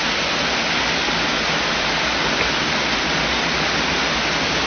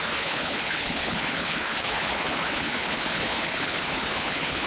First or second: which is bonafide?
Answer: first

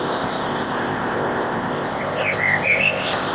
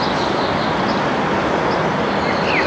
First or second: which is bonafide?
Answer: second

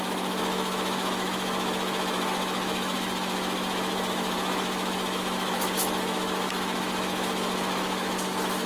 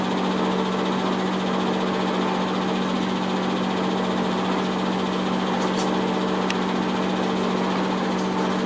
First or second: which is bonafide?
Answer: second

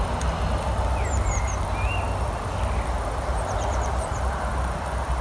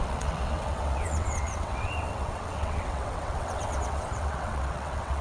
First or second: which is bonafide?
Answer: first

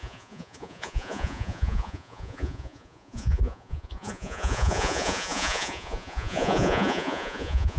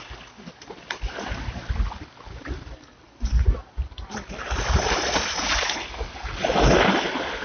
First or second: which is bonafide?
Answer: second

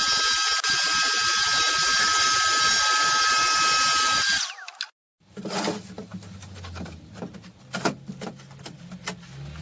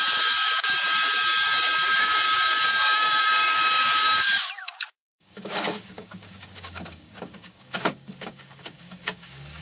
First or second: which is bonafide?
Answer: first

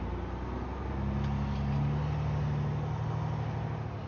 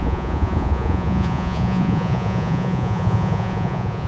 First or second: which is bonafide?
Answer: first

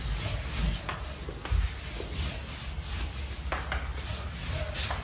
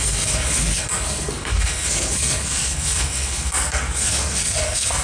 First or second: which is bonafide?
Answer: first